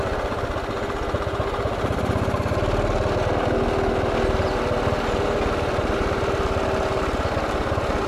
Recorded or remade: recorded